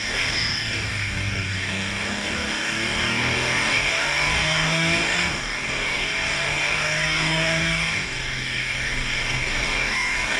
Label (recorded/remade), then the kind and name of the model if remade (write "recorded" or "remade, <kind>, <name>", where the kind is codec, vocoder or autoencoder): remade, codec, DAC